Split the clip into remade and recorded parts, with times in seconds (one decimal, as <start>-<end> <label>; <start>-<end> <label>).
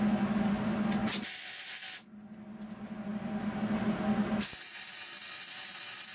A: 0.0-6.1 recorded